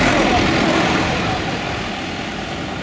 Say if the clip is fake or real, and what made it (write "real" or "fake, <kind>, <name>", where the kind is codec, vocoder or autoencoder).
real